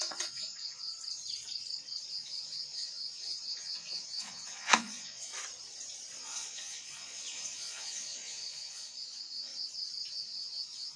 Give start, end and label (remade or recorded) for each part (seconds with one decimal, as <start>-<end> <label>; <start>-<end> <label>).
0.0-0.9 remade; 0.9-2.1 recorded; 2.1-5.3 remade; 5.3-6.2 recorded; 6.2-9.5 remade; 9.5-10.1 recorded; 10.1-11.0 remade